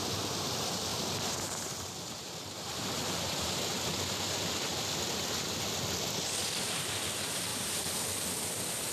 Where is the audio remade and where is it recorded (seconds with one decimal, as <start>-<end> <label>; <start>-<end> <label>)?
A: 0.0-0.9 recorded; 0.9-3.6 remade; 3.6-7.5 recorded; 7.5-8.1 remade; 8.1-8.9 recorded